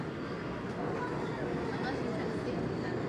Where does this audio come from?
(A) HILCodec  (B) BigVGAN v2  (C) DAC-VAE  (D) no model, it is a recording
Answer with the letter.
D